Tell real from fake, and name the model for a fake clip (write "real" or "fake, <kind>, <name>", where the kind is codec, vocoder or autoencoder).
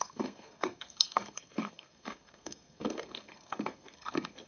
fake, codec, SNAC